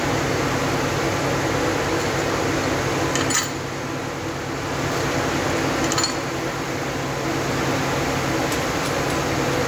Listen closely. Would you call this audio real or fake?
real